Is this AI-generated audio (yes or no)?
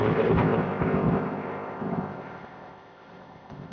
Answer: yes